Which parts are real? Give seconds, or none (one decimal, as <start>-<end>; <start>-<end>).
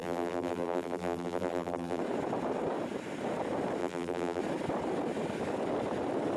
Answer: 2.0-3.8; 4.4-6.4